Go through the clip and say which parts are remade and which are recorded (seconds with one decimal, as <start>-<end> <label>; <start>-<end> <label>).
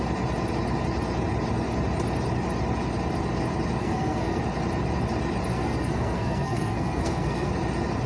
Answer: 0.0-3.8 recorded; 3.8-4.4 remade; 4.4-5.5 recorded; 5.5-7.5 remade; 7.5-8.1 recorded